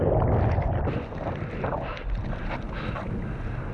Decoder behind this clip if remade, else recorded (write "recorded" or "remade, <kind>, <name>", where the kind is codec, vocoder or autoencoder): recorded